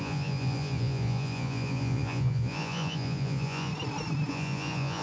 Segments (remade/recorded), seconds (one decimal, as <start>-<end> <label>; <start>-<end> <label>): 0.0-3.7 remade; 3.7-4.3 recorded; 4.3-5.0 remade